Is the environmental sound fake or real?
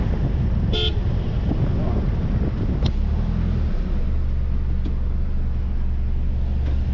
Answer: real